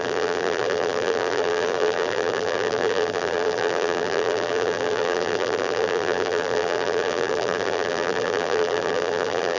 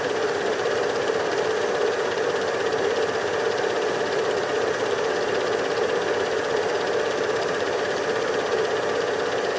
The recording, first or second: second